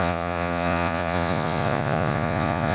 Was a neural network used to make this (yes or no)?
yes